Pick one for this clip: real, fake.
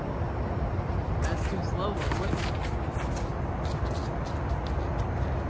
real